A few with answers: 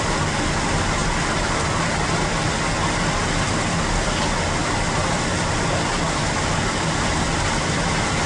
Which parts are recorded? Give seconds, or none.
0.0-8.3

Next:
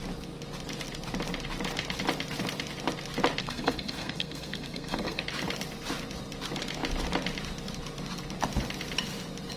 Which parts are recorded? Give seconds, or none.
0.0-3.4; 5.2-9.6

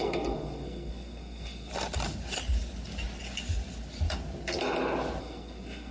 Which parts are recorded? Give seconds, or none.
1.7-5.2

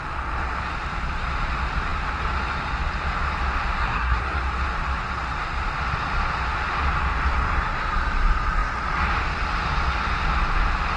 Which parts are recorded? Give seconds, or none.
0.0-3.8; 4.4-11.0

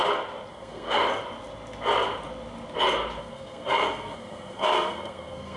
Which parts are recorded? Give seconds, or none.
0.0-0.5; 1.0-3.2

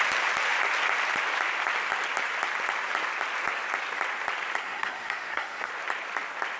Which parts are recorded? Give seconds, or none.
0.0-4.6; 5.7-6.6

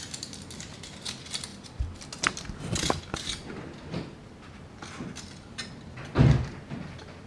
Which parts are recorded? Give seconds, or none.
0.0-7.3